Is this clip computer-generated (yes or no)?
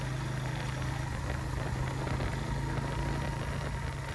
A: no